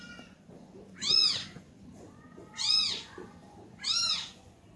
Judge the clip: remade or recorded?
remade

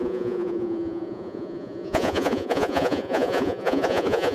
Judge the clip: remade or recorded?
remade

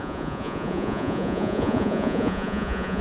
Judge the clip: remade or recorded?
remade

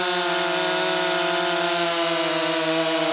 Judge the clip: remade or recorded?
recorded